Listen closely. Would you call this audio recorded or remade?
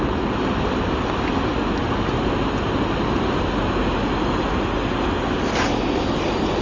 recorded